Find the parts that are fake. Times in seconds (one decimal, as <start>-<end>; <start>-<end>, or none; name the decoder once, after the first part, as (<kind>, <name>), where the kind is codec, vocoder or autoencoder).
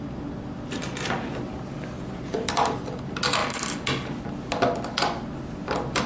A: none